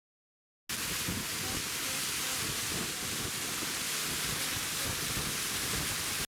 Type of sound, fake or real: real